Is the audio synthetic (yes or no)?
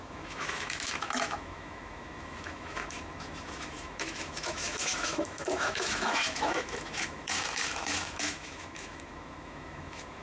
yes